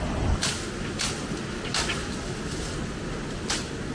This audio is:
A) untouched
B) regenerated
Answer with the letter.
A